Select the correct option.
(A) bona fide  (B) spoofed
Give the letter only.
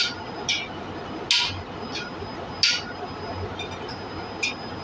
A